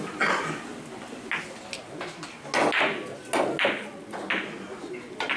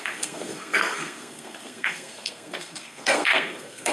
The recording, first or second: first